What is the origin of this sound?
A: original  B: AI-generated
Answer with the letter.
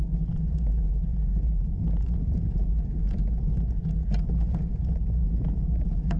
B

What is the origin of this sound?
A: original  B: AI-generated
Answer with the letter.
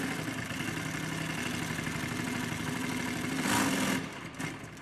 A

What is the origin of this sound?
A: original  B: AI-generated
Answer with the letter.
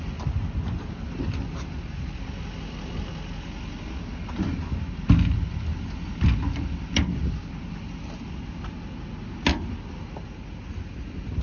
A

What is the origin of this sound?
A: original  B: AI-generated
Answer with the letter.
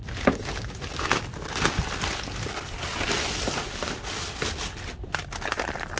A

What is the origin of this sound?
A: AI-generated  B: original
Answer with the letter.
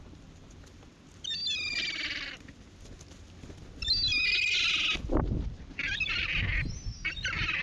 B